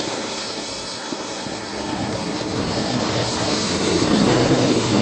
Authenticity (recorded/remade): remade